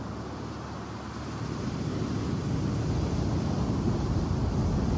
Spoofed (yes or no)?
no